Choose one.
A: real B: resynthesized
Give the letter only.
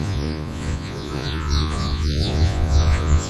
B